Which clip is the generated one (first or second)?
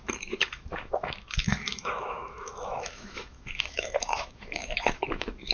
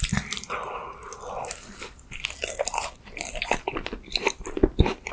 first